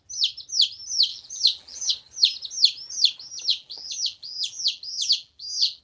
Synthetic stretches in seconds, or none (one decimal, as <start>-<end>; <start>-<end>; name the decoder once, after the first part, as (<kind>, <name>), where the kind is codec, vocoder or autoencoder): 1.1-1.9 (vocoder, BigVGAN v2); 3.5-5.8